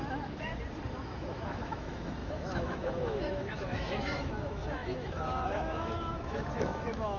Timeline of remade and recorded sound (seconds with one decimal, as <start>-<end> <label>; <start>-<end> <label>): 0.0-0.5 remade; 0.5-1.0 recorded; 1.0-7.2 remade